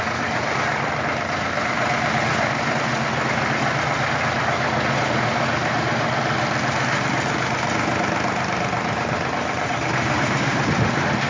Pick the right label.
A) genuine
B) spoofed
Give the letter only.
A